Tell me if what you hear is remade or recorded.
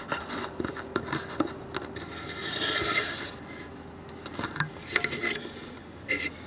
recorded